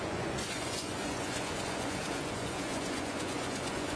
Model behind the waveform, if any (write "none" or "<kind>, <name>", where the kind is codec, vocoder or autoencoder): vocoder, Vocos